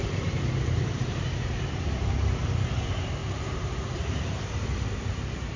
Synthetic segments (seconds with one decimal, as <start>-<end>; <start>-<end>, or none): 0.0-5.6